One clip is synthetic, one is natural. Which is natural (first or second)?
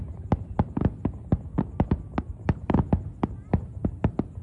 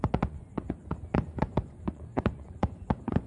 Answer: first